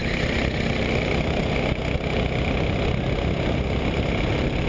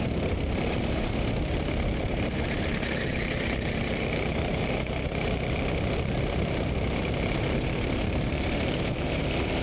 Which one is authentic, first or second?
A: first